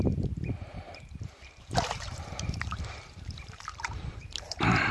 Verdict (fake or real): fake